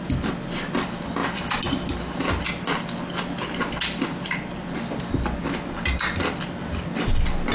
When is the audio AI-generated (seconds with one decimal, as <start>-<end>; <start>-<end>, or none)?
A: none